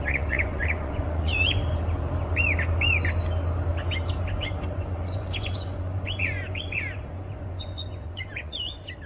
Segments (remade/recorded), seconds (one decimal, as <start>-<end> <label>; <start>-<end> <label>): 0.0-1.6 remade; 1.6-4.3 recorded; 4.3-9.1 remade